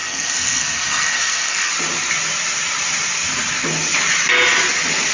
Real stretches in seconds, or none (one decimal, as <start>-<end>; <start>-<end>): 1.7-5.1